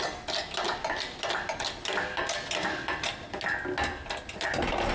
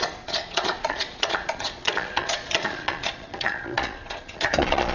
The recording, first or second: first